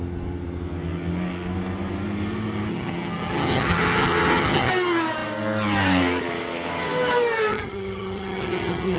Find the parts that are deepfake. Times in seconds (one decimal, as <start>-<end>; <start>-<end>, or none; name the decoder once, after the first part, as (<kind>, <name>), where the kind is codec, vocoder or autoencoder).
2.7-4.7 (vocoder, HiFi-GAN); 7.5-9.0